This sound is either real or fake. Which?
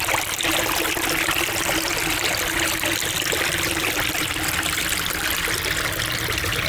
real